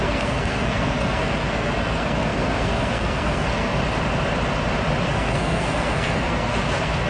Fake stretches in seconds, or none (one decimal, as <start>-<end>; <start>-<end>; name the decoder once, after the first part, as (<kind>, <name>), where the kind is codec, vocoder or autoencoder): 0.0-3.7 (codec, SNAC); 5.0-7.1